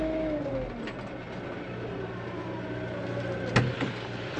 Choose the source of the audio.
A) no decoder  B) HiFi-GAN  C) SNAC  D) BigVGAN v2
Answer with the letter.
A